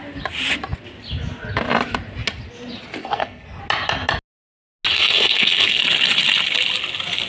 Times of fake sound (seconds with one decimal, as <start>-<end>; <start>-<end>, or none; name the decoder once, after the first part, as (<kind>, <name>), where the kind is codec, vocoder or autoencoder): 3.0-3.6 (codec, SNAC); 4.9-5.8